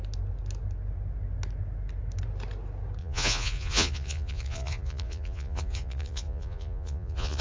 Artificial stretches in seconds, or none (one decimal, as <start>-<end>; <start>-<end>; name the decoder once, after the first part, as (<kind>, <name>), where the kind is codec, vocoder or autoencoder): 3.0-7.4 (vocoder, Vocos)